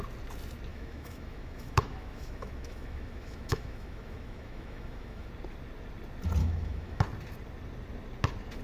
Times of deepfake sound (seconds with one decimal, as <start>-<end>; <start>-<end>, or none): 0.7-5.3; 6.4-7.0